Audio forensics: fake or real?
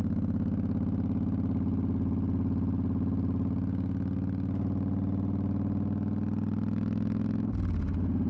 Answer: real